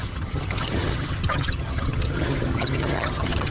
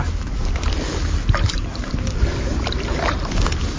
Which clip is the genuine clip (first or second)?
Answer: second